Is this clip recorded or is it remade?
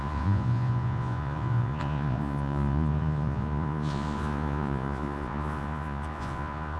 remade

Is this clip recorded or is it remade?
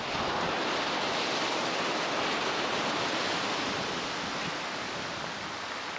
recorded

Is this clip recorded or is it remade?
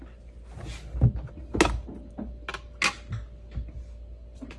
recorded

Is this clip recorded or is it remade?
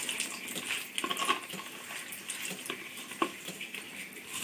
recorded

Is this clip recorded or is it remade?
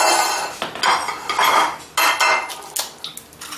recorded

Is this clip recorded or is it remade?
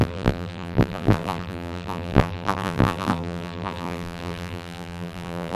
remade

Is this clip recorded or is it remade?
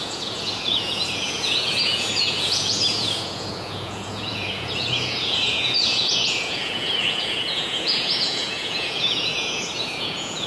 remade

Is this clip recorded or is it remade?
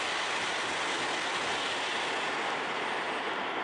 recorded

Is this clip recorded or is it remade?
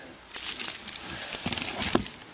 recorded